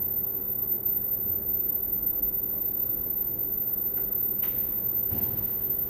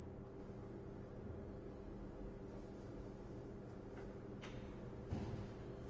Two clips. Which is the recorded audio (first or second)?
second